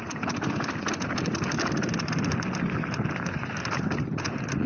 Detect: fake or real real